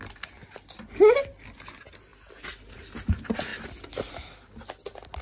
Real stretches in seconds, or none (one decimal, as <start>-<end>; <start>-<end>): 0.0-5.2